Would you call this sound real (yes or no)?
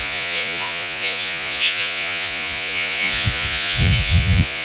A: no